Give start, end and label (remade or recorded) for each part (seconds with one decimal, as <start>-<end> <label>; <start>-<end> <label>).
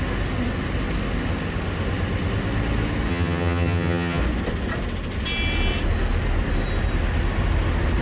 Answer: 0.0-3.1 recorded; 3.1-4.2 remade; 4.2-8.0 recorded